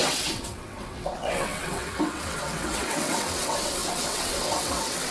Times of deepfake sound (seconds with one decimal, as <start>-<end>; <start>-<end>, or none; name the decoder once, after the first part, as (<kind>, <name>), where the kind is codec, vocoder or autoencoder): 0.0-5.1 (vocoder, WaveNeXt)